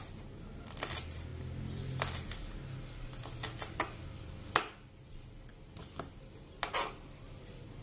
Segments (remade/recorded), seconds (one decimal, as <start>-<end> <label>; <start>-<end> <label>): 0.0-7.8 recorded